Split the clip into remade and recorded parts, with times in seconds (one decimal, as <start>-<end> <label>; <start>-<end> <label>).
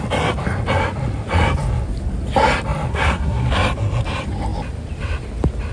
0.0-2.9 recorded; 2.9-3.5 remade; 3.5-5.7 recorded